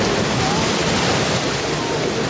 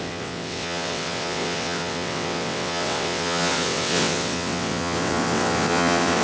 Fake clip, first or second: second